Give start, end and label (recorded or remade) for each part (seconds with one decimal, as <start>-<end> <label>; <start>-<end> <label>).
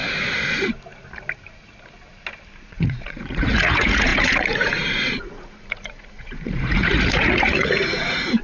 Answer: 0.0-2.6 recorded; 2.6-8.4 remade